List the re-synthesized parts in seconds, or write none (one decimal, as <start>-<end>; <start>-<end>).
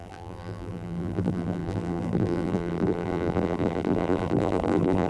0.0-5.1